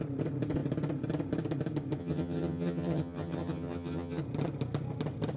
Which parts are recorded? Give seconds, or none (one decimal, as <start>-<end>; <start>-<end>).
0.0-2.0; 4.2-5.4